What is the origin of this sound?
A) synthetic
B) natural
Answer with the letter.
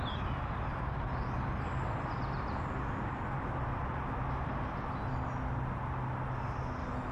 B